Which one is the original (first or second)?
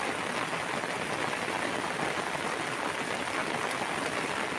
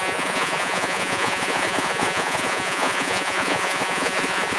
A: first